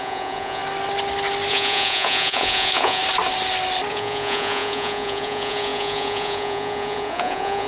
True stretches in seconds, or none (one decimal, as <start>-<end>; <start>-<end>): 0.6-1.5; 3.0-3.9